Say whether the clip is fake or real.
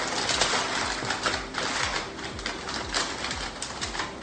real